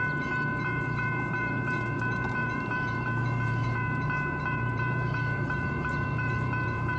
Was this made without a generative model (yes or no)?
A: no